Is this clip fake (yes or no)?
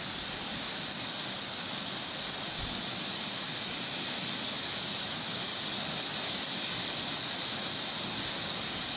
no